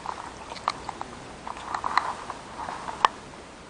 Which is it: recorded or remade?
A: recorded